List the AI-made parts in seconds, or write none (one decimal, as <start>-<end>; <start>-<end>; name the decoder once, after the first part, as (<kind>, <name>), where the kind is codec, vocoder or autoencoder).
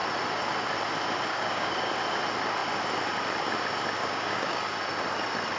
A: 1.3-1.9 (codec, DAC); 4.0-4.6